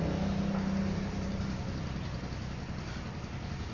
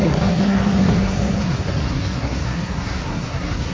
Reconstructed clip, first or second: second